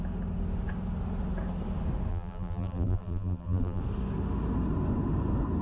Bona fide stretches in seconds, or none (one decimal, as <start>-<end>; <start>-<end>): 0.0-2.1; 3.8-5.6